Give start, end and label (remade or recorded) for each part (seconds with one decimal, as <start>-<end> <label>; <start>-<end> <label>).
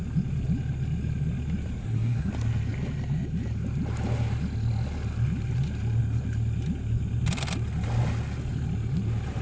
0.0-1.8 recorded; 1.8-2.3 remade; 2.3-9.4 recorded